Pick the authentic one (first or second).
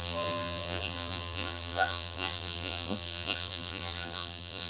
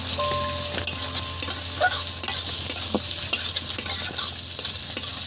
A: second